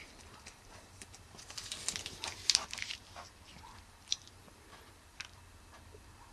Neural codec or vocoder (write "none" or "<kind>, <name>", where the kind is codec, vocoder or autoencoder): vocoder, BigVGAN v2